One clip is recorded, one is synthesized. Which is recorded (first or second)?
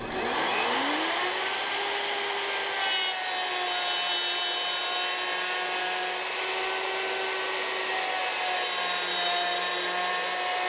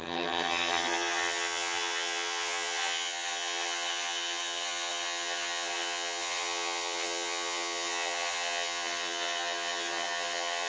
first